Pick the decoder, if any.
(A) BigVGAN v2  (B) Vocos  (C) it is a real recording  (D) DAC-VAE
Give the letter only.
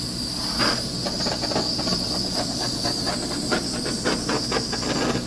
C